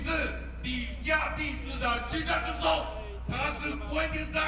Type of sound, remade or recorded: recorded